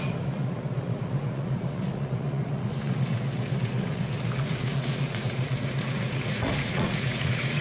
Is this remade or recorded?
remade